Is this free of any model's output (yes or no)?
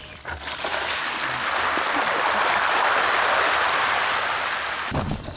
yes